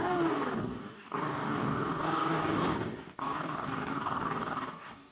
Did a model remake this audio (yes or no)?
yes